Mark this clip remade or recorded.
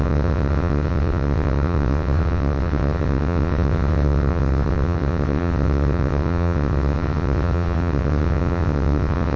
remade